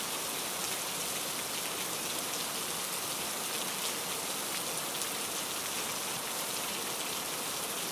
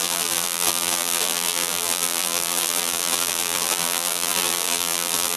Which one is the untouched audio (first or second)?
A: first